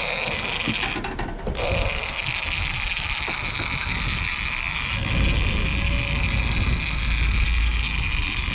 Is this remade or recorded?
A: recorded